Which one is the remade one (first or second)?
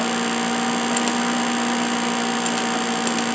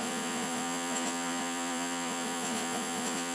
second